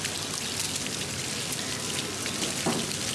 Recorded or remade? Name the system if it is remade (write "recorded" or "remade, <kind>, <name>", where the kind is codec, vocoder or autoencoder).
recorded